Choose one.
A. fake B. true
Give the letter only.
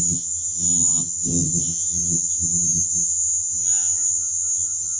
A